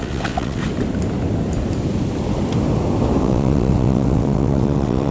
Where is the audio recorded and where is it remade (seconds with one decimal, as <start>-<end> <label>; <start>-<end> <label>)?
0.0-0.6 remade; 0.6-3.2 recorded; 3.2-5.1 remade